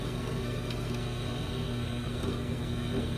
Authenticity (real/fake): fake